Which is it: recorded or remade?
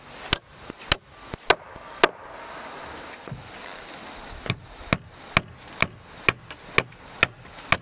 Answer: recorded